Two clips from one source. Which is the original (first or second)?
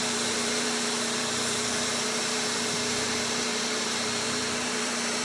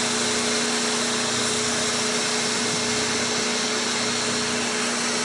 second